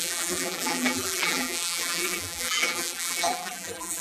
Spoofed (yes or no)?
yes